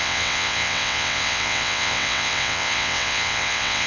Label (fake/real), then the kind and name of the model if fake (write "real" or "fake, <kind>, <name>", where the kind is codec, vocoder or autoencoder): fake, vocoder, WaveNeXt